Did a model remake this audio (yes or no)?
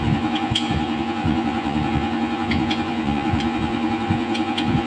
yes